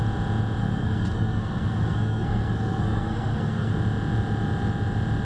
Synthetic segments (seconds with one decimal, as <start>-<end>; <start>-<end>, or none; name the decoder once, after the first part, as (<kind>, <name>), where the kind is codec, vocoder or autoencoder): 0.6-3.7 (codec, SNAC)